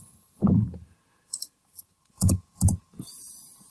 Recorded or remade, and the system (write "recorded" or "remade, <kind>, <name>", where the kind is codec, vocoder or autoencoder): remade, vocoder, Vocos